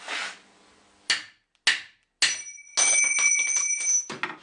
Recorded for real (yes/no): yes